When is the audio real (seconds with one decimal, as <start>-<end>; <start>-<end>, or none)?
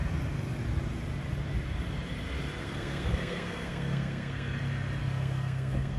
0.0-2.6; 4.6-5.0